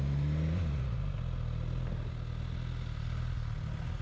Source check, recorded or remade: recorded